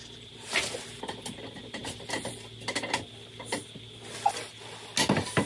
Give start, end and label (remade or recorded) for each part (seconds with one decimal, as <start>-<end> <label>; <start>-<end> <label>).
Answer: 0.0-5.5 recorded